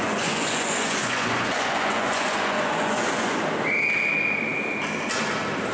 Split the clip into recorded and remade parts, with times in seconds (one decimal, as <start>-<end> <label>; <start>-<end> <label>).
0.0-3.4 remade; 3.4-5.7 recorded